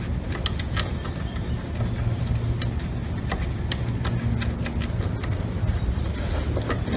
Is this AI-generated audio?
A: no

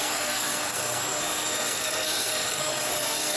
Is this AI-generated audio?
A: yes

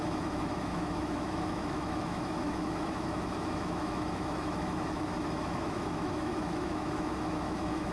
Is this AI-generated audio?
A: yes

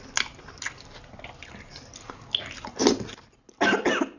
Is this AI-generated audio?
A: no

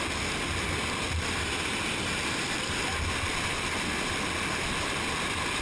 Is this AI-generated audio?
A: no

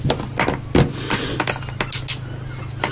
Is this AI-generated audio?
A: no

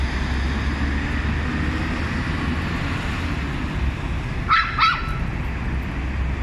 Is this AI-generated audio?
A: no